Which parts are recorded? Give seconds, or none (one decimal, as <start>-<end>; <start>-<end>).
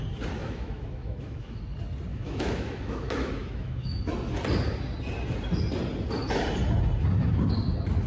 0.0-0.4; 1.6-2.1; 4.0-8.1